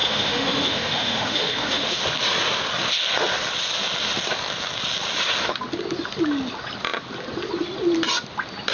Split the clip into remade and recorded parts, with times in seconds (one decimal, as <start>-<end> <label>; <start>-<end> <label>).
0.0-2.0 remade; 2.0-8.7 recorded